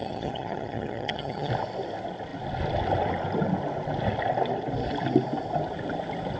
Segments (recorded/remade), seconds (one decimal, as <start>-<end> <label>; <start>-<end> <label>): 0.0-1.5 remade; 1.5-6.4 recorded